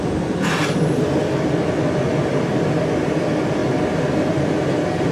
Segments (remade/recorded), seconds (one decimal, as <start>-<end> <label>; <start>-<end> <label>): 0.0-0.6 recorded; 0.6-1.3 remade; 1.3-2.1 recorded; 2.1-2.9 remade; 2.9-3.6 recorded; 3.6-4.3 remade; 4.3-5.1 recorded